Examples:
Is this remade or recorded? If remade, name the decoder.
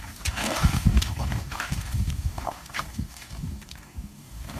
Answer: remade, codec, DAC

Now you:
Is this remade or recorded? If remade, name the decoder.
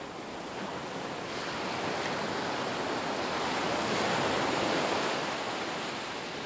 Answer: recorded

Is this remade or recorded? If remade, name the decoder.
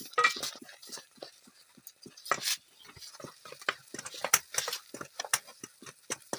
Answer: recorded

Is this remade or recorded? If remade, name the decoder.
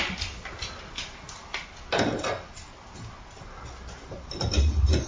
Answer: recorded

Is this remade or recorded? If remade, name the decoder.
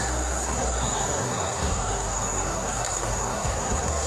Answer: remade, codec, SNAC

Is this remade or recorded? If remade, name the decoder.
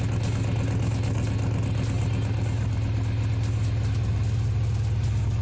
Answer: recorded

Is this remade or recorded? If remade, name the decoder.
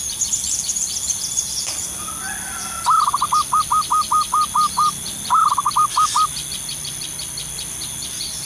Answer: recorded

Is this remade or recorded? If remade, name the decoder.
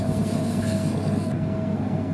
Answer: remade, codec, SNAC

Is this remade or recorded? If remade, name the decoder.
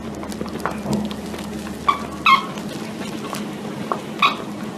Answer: recorded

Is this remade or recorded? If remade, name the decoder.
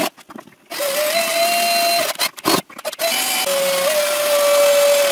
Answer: recorded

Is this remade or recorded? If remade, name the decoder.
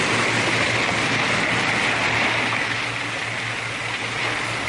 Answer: recorded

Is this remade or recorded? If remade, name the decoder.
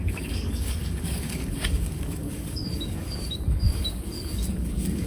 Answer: remade, codec, DAC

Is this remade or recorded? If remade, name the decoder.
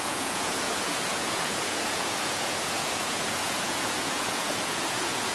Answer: remade, vocoder, Vocos